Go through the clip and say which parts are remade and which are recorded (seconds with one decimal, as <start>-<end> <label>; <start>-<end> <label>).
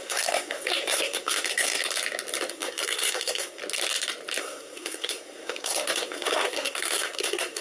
0.0-1.8 remade; 1.8-2.5 recorded; 2.5-3.6 remade; 3.6-4.4 recorded; 4.4-7.6 remade